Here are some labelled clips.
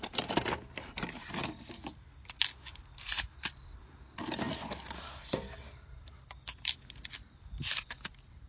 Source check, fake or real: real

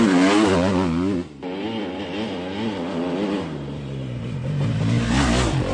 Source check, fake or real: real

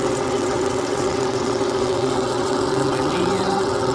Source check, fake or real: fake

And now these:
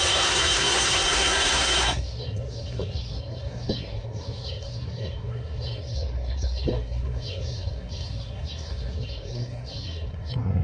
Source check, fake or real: fake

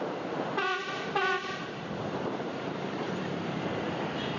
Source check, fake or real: fake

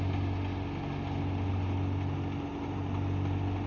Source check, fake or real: real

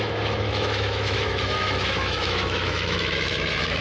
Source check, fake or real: fake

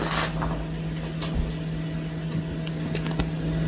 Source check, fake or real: real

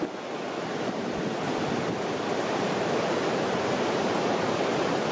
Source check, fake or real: fake